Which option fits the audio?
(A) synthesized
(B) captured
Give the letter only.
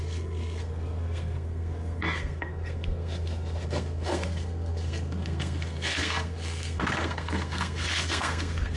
A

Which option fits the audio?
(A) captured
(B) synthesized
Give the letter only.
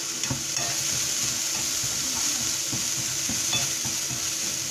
A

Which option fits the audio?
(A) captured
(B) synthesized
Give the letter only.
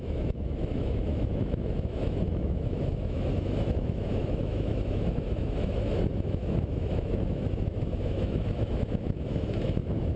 B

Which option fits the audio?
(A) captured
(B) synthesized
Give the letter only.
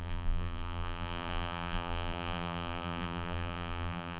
B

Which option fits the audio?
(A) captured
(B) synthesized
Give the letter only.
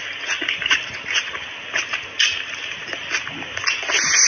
A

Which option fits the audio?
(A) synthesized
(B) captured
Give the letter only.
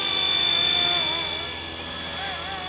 B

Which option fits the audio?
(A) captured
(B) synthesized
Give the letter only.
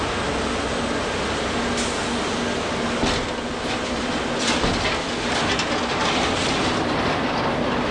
A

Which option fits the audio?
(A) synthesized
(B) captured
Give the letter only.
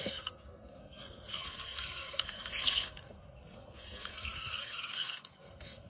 A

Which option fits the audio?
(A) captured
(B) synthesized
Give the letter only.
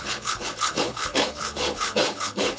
B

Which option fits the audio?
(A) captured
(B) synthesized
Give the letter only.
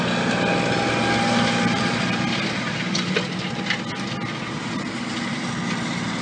A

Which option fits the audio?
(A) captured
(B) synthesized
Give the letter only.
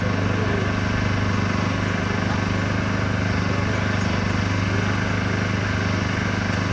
A